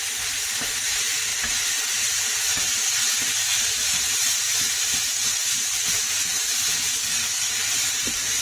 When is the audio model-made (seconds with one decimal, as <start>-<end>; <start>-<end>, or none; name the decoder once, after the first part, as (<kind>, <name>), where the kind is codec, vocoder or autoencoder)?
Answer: 7.0-7.5 (codec, SNAC)